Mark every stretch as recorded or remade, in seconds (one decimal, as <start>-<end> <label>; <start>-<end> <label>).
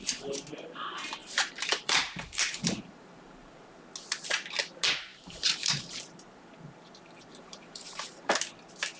0.0-1.2 recorded; 1.2-3.9 remade; 3.9-5.1 recorded; 5.1-6.0 remade; 6.0-7.3 recorded; 7.3-8.3 remade; 8.3-9.0 recorded